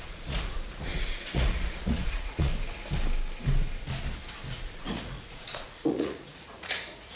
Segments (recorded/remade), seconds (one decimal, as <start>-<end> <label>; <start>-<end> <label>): 0.0-2.5 remade; 2.5-4.5 recorded; 4.5-7.2 remade